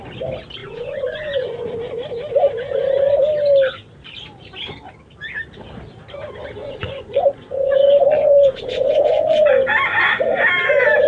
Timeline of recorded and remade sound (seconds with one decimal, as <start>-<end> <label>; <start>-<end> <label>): 0.0-0.6 recorded; 0.6-1.7 remade; 1.7-6.6 recorded; 6.6-9.5 remade; 9.5-11.1 recorded